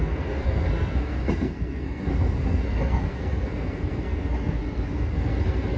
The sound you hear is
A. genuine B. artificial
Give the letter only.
B